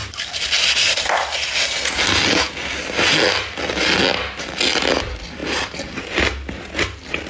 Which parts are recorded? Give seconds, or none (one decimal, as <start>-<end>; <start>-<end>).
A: 0.0-7.3